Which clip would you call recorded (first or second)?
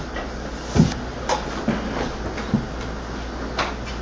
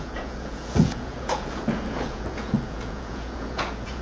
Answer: first